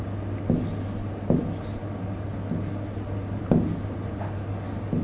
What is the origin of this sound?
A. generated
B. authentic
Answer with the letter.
B